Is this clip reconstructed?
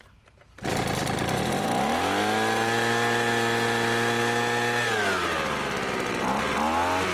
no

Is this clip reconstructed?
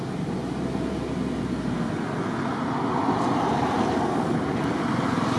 no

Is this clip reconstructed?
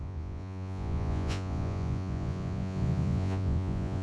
yes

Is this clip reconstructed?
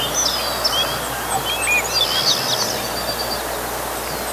no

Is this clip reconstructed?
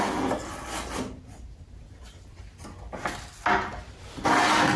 no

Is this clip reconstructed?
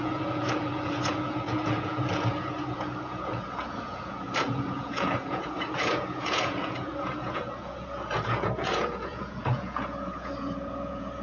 yes